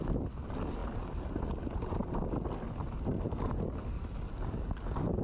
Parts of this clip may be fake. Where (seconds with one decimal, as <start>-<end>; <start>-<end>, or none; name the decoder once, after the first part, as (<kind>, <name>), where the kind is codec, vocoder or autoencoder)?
none